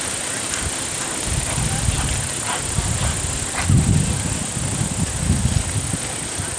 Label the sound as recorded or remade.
recorded